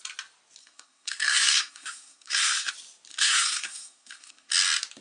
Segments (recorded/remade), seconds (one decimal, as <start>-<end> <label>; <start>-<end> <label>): 0.0-0.6 recorded; 0.6-2.7 remade; 2.7-3.1 recorded; 3.1-4.5 remade; 4.5-5.0 recorded